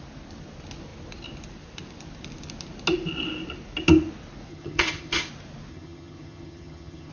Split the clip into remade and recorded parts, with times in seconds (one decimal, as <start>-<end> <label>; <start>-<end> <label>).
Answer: 0.0-4.5 recorded; 4.5-5.3 remade; 5.3-5.7 recorded; 5.7-7.1 remade